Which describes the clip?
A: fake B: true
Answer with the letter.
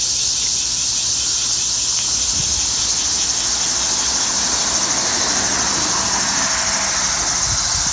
B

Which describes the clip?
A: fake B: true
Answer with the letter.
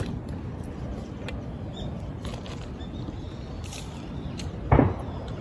B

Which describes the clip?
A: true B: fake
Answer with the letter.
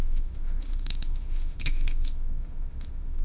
B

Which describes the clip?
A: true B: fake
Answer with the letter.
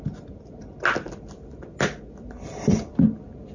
A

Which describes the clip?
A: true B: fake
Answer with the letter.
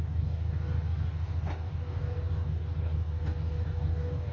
B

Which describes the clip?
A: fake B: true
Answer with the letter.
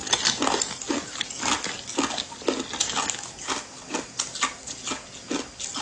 B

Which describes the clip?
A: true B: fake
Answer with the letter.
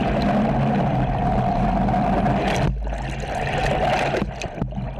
A